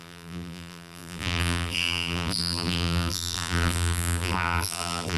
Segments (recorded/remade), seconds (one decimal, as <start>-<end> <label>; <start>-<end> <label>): 0.0-5.2 remade